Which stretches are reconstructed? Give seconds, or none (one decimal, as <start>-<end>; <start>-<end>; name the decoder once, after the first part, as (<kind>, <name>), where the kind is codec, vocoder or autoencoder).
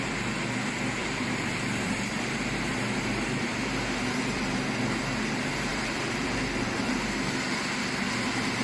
1.0-2.4 (vocoder, BigVGAN v2); 5.7-6.4